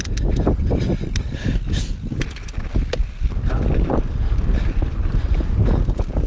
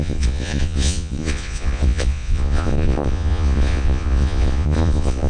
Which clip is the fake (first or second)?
second